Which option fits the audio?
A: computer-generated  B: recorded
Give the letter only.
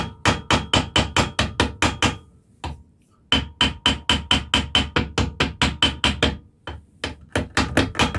B